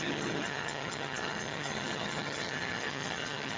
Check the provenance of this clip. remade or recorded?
remade